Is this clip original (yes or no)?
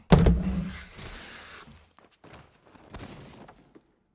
yes